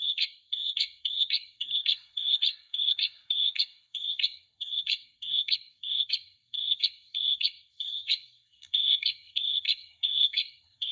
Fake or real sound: fake